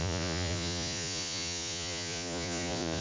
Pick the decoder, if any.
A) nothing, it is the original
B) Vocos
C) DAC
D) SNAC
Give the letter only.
B